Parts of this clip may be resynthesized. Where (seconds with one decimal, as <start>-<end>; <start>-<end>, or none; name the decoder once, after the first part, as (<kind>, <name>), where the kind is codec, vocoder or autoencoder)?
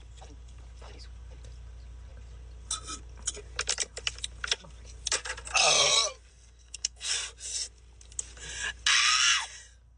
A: 6.3-7.1 (codec, SNAC)